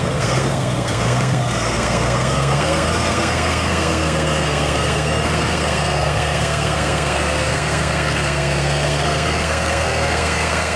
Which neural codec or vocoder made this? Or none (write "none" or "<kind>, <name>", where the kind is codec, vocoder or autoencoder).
codec, SNAC